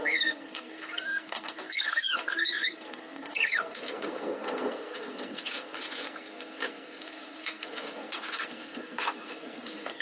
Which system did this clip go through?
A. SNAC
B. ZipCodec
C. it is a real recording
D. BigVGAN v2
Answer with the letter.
A